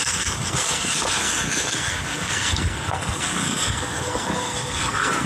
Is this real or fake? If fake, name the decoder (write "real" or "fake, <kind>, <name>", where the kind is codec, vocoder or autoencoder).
fake, codec, SNAC